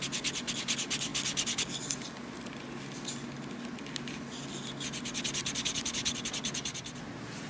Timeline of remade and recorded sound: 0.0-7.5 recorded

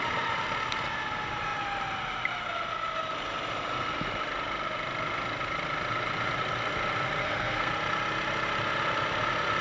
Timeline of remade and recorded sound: 0.0-7.2 recorded; 7.2-7.7 remade; 7.7-9.6 recorded

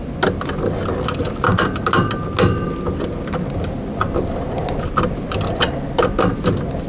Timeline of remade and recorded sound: 0.0-6.9 recorded

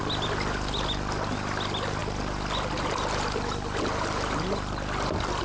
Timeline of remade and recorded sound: 0.0-5.4 recorded